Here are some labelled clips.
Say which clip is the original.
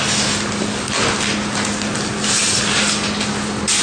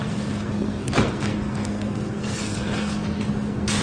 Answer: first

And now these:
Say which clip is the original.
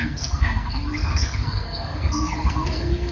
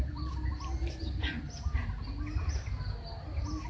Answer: second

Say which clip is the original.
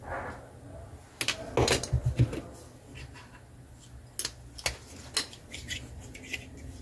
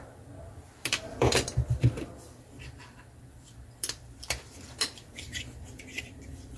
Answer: first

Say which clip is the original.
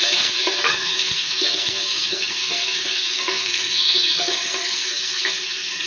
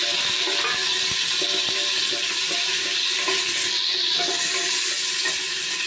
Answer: second